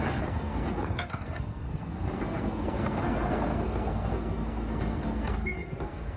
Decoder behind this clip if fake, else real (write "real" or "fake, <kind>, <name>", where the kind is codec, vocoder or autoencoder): fake, codec, SNAC